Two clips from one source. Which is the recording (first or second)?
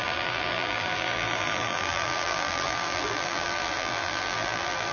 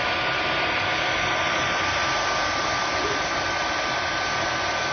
second